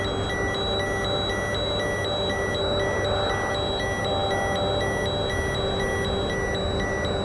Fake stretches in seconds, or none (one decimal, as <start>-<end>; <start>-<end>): none